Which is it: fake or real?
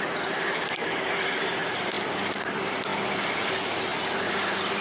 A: real